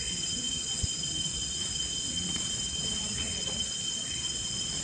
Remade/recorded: remade